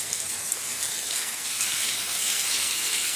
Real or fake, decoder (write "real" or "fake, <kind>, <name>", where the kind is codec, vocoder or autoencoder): fake, codec, SNAC